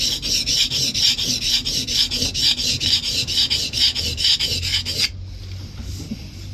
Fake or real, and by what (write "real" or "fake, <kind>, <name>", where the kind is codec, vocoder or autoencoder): real